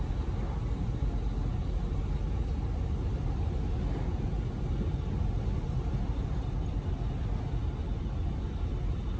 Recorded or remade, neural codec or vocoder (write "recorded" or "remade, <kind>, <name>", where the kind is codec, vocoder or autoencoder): recorded